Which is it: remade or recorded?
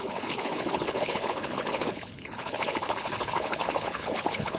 remade